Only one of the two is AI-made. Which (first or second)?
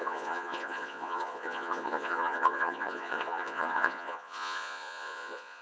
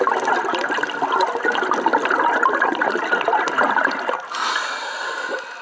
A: first